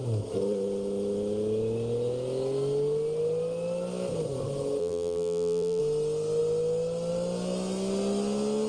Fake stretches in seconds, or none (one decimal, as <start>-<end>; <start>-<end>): 4.8-5.8